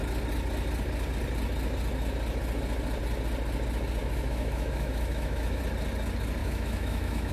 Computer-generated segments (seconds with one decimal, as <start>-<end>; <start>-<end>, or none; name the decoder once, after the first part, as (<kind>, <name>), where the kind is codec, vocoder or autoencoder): 4.0-5.6 (autoencoder, DAC-VAE); 6.4-7.3